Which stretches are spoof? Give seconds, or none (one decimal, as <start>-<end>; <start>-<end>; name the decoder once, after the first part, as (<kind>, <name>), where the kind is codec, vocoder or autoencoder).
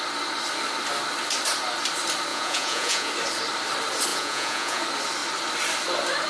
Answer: 2.3-3.1 (vocoder, Vocos); 4.1-4.8